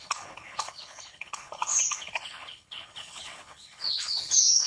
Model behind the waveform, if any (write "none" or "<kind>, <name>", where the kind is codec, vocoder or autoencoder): codec, HILCodec